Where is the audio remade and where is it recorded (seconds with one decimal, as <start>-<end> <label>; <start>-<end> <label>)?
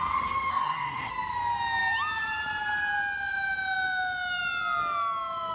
0.0-0.5 recorded; 0.5-1.1 remade; 1.1-5.5 recorded